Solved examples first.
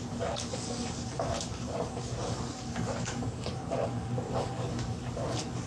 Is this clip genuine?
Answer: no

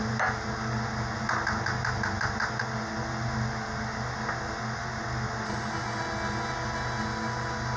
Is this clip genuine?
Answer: yes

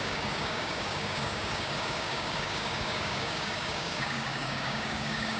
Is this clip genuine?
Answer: no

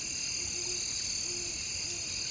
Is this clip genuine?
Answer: yes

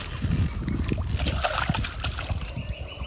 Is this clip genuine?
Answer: yes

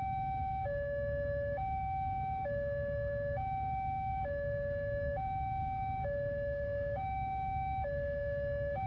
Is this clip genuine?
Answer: no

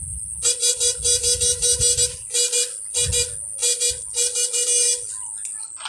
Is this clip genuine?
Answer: yes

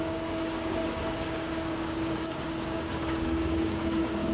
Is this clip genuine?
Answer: no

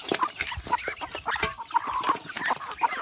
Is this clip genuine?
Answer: yes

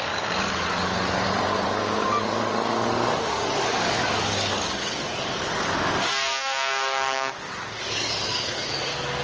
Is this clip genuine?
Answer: no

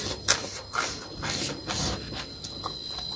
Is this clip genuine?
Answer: yes